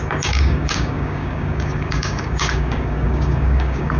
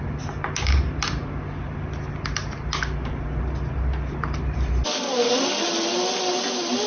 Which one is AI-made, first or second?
first